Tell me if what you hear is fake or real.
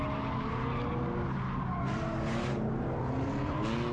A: real